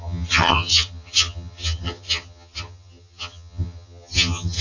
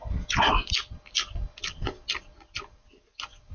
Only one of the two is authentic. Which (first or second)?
second